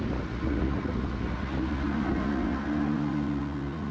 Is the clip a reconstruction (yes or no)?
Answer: yes